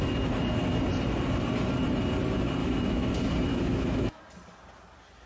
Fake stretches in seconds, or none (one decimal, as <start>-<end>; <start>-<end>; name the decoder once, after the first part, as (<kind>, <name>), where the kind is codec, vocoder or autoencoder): 2.6-3.1 (autoencoder, DAC-VAE); 3.5-4.2